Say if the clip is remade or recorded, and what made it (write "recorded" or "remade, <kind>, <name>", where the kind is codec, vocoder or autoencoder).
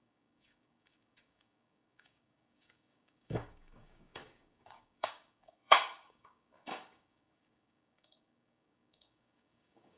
remade, codec, DAC